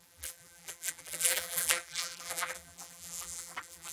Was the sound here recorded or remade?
remade